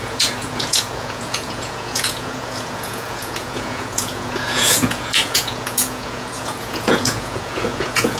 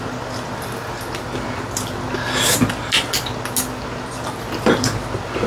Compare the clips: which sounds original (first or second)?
second